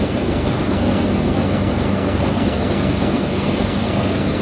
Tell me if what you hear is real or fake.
fake